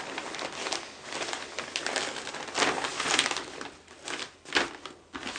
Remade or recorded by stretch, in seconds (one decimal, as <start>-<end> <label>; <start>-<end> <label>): 0.0-5.4 recorded